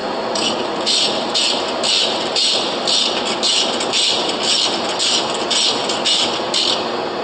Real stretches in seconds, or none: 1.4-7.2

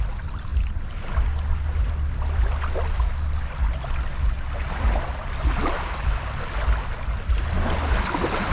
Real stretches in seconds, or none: 0.0-8.5

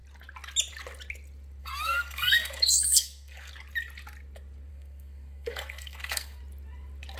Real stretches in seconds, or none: 0.0-1.6; 3.5-4.7; 6.4-7.2

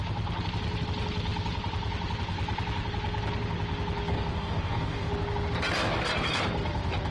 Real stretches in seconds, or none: 0.0-4.1; 5.1-7.1

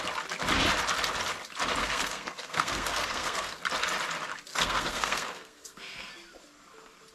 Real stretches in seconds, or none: 0.0-1.8; 3.6-4.5; 6.1-7.1

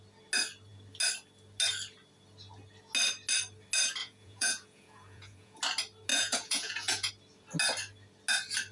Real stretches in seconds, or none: 0.0-4.0; 5.6-6.1; 7.1-8.7